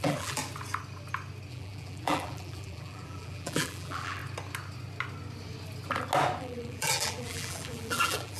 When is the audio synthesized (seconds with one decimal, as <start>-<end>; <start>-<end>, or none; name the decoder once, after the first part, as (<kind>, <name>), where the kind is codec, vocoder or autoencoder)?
0.0-0.4 (vocoder, BigVGAN v2); 1.5-4.2; 6.4-8.4